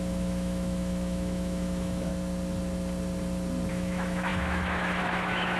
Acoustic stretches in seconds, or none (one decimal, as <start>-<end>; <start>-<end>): 2.1-3.7